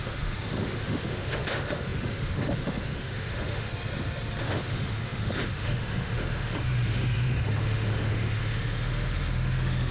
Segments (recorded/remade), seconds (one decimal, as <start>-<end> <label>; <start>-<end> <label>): 0.0-3.7 remade; 3.7-4.4 recorded; 4.4-9.9 remade